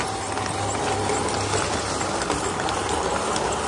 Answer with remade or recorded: recorded